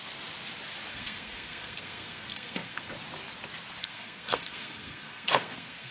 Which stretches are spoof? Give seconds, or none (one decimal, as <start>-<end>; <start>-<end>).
0.9-2.9; 3.8-5.9